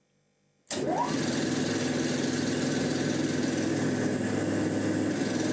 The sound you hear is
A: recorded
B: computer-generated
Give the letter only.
A